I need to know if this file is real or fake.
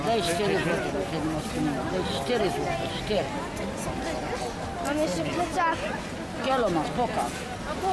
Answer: real